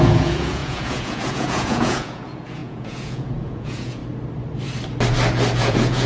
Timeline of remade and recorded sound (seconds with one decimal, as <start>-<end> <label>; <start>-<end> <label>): 0.0-4.0 remade; 4.0-5.6 recorded; 5.6-6.1 remade